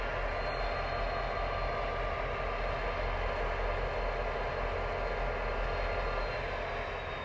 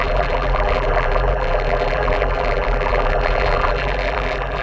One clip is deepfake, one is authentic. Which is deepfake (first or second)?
second